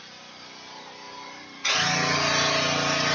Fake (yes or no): no